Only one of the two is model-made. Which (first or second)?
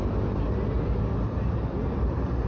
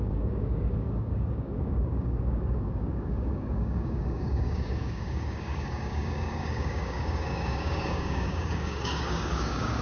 second